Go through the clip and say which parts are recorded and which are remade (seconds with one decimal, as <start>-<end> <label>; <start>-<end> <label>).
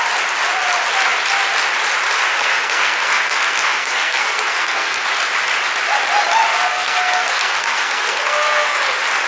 0.0-2.3 recorded; 2.3-5.0 remade; 5.0-6.5 recorded; 6.5-8.8 remade; 8.8-9.3 recorded